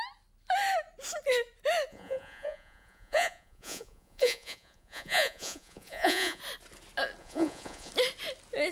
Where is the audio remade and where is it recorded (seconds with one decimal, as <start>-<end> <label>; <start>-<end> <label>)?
0.0-1.9 recorded; 1.9-6.4 remade; 6.4-7.2 recorded; 7.2-7.9 remade; 7.9-8.7 recorded